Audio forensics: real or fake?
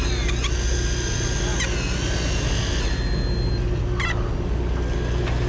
real